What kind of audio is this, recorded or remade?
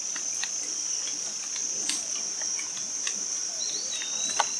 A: recorded